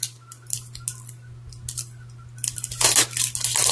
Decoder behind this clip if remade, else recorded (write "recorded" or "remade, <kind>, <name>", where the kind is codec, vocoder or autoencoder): recorded